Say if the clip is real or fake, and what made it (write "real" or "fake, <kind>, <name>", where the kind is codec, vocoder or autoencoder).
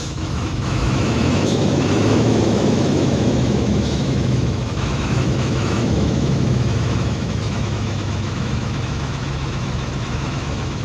fake, autoencoder, DAC-VAE